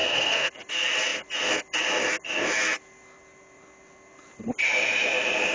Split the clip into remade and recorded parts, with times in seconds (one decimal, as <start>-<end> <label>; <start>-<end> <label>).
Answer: 0.0-0.5 remade; 0.5-5.5 recorded